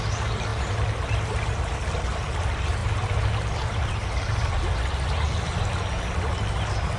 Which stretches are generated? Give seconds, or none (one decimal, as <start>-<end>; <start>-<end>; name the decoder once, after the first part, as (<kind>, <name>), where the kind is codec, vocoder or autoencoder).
none